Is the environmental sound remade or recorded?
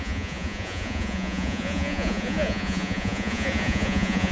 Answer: remade